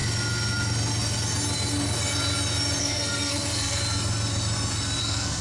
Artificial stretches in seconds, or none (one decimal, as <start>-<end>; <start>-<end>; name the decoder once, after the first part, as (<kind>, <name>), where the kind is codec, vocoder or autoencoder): 2.8-3.8 (codec, SNAC); 5.0-5.4